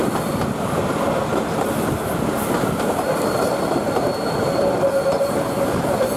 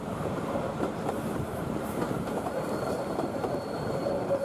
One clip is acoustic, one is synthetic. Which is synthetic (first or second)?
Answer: second